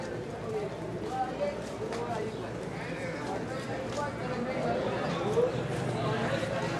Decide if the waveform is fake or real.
real